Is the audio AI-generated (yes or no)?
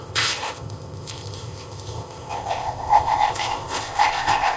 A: yes